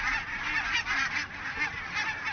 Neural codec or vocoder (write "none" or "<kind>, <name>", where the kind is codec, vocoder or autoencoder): none